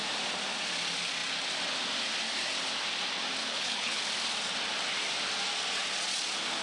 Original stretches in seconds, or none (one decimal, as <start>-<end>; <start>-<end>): 0.0-3.4; 4.0-6.6